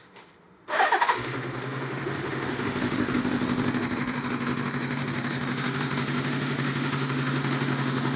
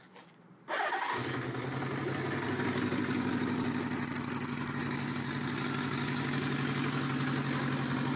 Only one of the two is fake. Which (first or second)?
first